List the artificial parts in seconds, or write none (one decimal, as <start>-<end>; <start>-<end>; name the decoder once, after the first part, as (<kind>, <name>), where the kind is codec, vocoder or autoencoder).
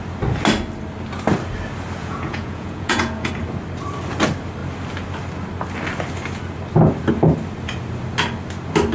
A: 2.0-3.3 (vocoder, Vocos)